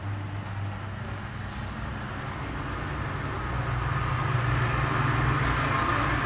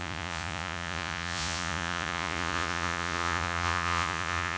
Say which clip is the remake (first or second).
second